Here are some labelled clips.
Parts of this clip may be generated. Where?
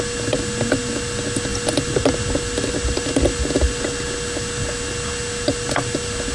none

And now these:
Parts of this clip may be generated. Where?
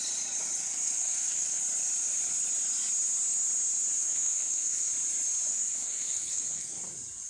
0.6-1.6 (codec, SNAC); 4.0-4.9; 5.5-6.8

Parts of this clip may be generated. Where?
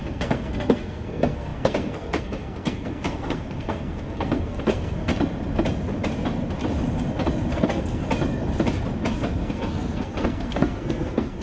0.0-5.1 (codec, SNAC); 7.5-8.0; 9.1-11.4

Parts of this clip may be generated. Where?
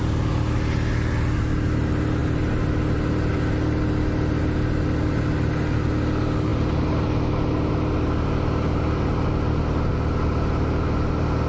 none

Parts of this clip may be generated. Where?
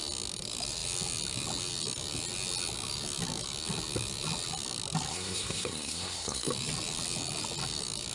5.1-6.5 (codec, SNAC)